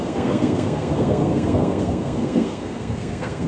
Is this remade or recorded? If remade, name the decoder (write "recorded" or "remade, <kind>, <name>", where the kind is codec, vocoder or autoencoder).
remade, codec, SNAC